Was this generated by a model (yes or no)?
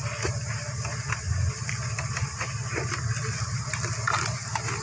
no